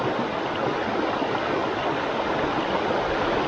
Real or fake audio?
real